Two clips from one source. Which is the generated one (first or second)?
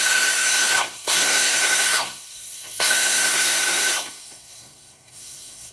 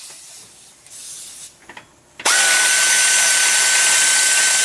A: first